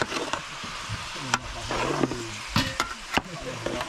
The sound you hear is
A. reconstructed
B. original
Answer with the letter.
B